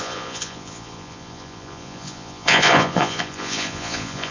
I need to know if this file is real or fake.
fake